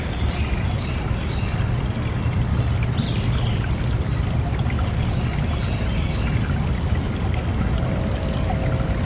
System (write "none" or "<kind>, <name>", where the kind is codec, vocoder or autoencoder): none